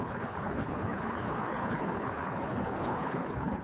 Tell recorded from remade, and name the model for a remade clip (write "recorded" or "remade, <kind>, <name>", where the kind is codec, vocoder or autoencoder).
remade, codec, HILCodec